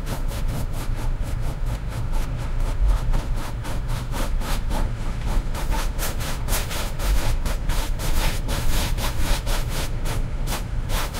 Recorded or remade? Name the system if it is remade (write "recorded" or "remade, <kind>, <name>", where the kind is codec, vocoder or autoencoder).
remade, autoencoder, DAC-VAE